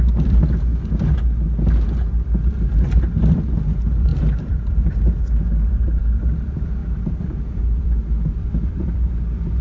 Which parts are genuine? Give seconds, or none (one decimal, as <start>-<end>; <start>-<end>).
0.7-2.4